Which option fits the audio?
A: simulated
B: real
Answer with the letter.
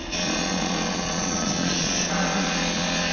A